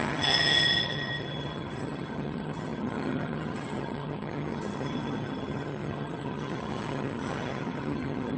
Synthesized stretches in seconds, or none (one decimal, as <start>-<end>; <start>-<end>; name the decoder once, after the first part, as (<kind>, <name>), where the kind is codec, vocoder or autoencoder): 0.0-8.4 (vocoder, HiFi-GAN)